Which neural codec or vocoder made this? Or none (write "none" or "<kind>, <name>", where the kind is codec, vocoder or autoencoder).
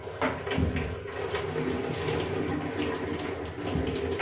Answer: none